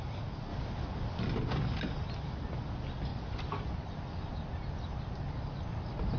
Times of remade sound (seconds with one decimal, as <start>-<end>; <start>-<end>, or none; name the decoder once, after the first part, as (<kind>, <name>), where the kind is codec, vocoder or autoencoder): none